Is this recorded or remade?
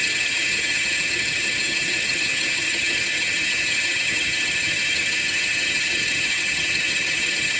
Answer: remade